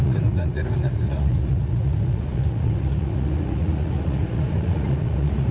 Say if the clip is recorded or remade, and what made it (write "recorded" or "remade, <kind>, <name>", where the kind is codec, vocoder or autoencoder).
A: remade, vocoder, Vocos